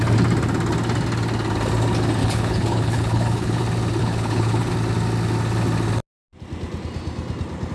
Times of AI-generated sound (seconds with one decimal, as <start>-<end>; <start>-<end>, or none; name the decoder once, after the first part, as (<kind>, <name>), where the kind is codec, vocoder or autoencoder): 2.2-3.6 (codec, HILCodec); 4.0-4.7